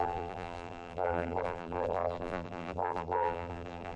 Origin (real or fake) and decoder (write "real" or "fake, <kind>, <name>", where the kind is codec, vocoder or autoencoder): fake, vocoder, BigVGAN v2